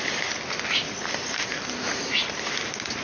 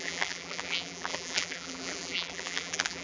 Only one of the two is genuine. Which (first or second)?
first